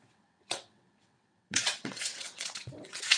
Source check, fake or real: fake